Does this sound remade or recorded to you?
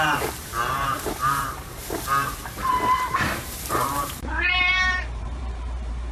remade